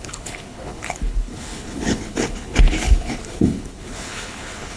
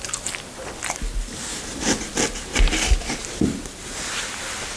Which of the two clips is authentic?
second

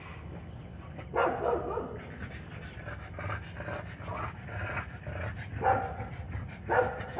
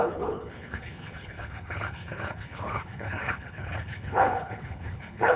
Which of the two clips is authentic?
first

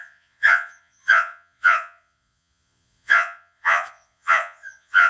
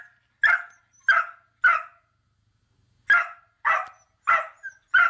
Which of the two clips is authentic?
second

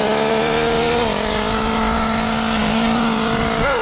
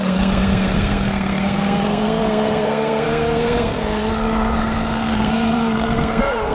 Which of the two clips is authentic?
first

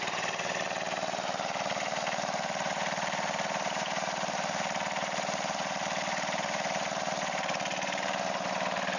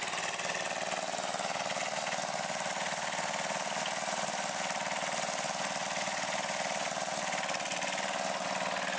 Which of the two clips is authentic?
second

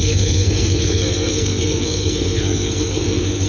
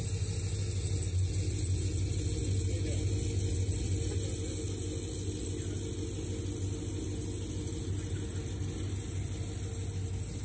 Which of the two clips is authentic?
second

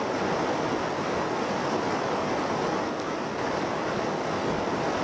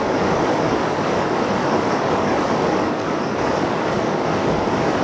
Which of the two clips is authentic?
first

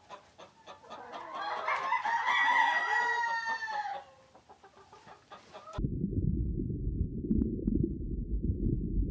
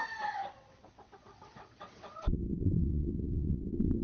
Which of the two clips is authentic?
first